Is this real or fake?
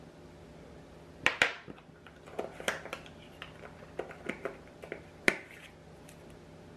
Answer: real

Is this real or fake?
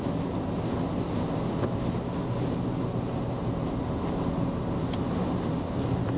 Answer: real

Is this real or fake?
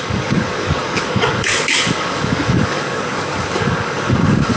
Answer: fake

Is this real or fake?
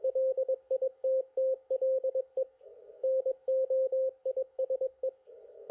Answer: fake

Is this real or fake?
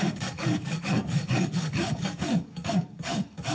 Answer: fake